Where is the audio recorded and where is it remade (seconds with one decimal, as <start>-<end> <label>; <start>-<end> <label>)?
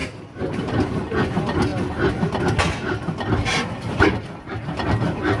0.0-5.4 recorded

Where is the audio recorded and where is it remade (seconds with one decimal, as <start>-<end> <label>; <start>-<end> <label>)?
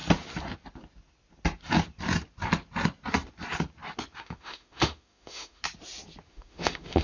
0.0-4.2 recorded; 4.2-5.6 remade; 5.6-6.3 recorded; 6.3-7.0 remade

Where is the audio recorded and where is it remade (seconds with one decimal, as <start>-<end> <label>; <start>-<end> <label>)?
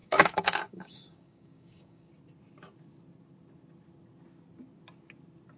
0.0-2.1 remade; 2.1-5.6 recorded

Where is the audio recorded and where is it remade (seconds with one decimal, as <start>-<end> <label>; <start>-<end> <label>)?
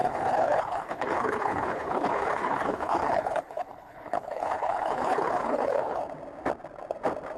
0.0-6.0 remade; 6.0-7.4 recorded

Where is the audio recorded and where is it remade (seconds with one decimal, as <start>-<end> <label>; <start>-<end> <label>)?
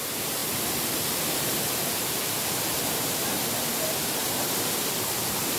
0.0-0.4 recorded; 0.4-2.2 remade; 2.2-2.7 recorded; 2.7-3.4 remade; 3.4-4.2 recorded; 4.2-4.8 remade; 4.8-5.6 recorded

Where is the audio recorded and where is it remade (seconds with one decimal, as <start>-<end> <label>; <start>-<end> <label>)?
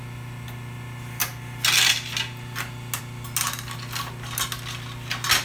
0.0-5.4 recorded